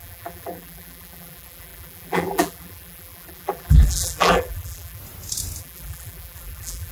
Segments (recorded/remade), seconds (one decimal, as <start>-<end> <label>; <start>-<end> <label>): 0.0-5.0 remade; 5.0-5.6 recorded; 5.6-6.9 remade